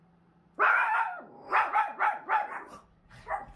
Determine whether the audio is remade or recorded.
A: remade